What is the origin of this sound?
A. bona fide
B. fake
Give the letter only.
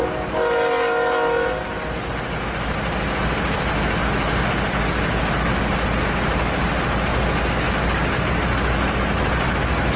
A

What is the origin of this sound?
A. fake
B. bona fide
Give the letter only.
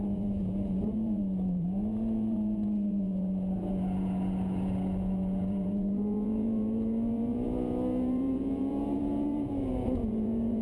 A